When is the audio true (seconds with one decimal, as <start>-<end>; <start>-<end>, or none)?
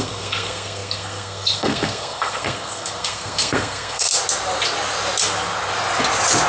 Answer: 4.1-6.5